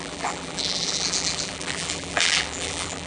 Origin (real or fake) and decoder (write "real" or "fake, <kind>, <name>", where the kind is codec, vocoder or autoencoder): fake, vocoder, BigVGAN v2